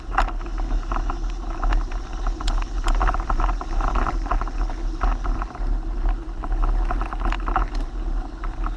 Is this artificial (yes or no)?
no